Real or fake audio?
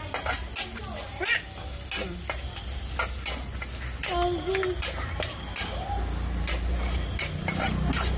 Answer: real